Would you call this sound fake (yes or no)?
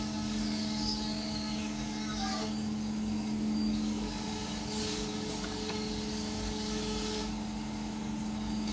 yes